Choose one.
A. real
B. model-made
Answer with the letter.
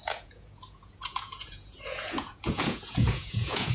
B